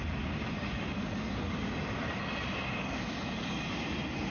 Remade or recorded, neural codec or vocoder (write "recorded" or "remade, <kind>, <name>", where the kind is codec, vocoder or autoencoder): remade, vocoder, BigVGAN v2